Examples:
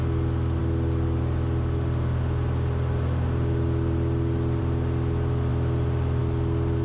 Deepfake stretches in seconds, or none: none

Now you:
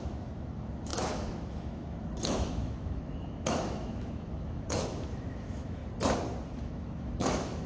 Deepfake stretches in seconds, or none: 0.0-5.8 (autoencoder, DAC-VAE); 6.6-7.7